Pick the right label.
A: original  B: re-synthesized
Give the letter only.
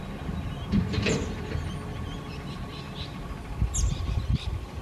A